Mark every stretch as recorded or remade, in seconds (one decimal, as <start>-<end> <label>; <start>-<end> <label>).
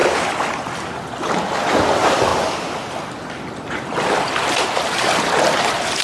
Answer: 0.0-6.0 recorded